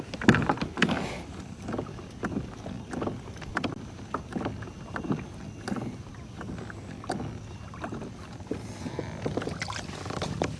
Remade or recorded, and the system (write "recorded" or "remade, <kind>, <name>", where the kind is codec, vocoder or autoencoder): recorded